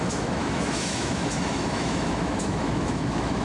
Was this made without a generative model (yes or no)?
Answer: no